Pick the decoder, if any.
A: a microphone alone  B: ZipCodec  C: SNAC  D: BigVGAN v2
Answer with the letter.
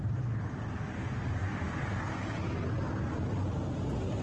A